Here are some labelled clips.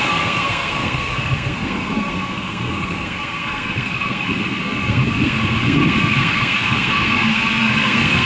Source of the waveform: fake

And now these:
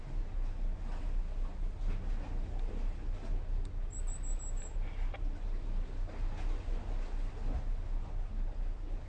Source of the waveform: real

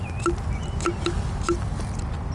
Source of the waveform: real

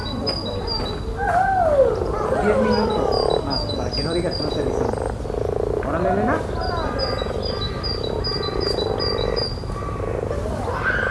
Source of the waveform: real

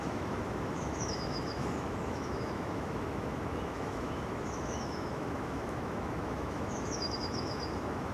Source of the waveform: fake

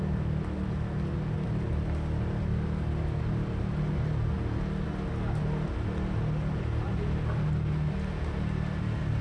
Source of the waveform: real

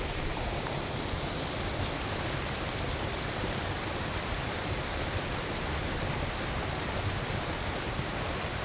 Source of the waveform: fake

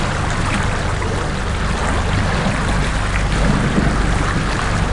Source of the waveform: real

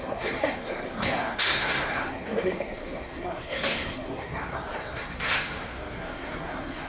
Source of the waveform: fake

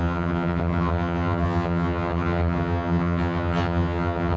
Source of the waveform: fake